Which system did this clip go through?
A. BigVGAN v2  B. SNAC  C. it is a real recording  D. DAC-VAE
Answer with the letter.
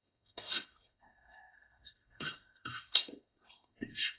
B